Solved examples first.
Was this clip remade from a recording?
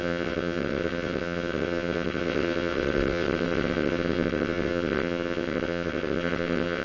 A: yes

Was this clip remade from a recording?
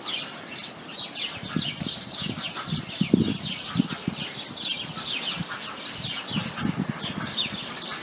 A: no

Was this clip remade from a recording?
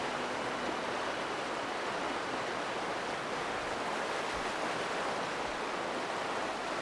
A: no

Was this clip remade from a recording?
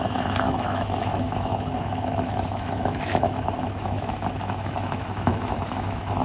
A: yes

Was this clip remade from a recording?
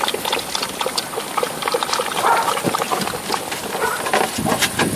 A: no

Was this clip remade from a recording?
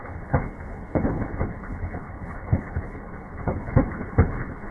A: yes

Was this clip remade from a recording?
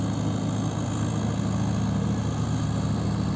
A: no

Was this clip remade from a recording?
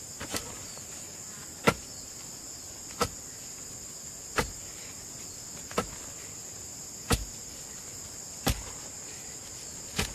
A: no